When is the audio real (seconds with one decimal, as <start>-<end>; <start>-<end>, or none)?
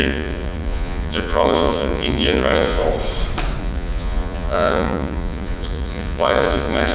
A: 2.8-3.6